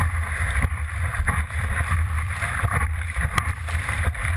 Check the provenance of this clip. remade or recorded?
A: remade